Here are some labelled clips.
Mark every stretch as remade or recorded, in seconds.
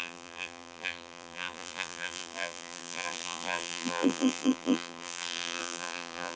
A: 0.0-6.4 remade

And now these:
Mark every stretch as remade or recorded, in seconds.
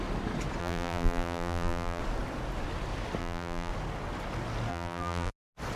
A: 0.0-0.6 recorded; 0.6-2.0 remade; 2.0-3.2 recorded; 3.2-3.7 remade; 3.7-4.7 recorded; 4.7-5.3 remade; 5.3-5.8 recorded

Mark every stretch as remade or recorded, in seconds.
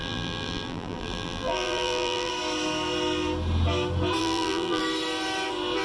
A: 0.0-2.3 remade; 2.3-4.2 recorded; 4.2-4.8 remade; 4.8-5.8 recorded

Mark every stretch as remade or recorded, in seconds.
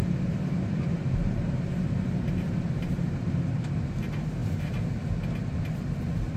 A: 0.0-3.8 remade; 3.8-4.4 recorded; 4.4-4.9 remade; 4.9-6.4 recorded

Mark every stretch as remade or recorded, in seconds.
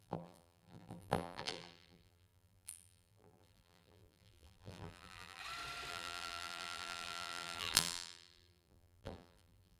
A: 0.0-5.4 remade; 5.4-5.9 recorded; 5.9-9.8 remade